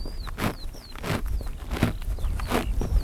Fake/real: real